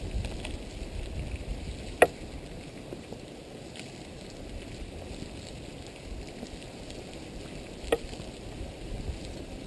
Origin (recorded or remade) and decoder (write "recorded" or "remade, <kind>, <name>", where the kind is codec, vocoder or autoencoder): recorded